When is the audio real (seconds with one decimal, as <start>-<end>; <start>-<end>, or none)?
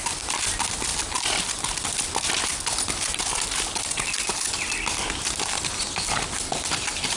0.0-7.2